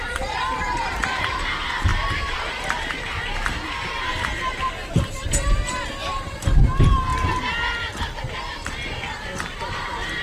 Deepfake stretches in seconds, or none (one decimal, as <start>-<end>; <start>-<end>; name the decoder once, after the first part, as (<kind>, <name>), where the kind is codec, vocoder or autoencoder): 0.0-7.1 (vocoder, BigVGAN v2); 8.2-10.2